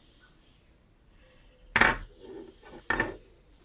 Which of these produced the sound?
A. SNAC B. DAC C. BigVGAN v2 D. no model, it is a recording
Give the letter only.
D